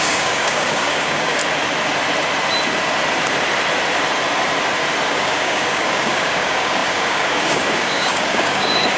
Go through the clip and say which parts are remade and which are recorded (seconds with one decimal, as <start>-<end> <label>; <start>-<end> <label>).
0.0-1.4 remade; 1.4-5.1 recorded; 5.1-9.0 remade